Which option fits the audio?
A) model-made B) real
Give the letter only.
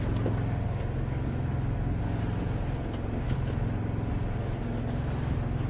B